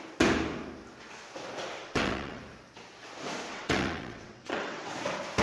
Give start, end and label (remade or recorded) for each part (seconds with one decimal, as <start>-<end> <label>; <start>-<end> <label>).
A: 0.0-1.8 recorded; 1.8-2.4 remade; 2.4-3.5 recorded; 3.5-4.9 remade; 4.9-5.4 recorded